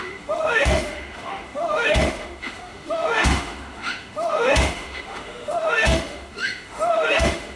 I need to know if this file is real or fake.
fake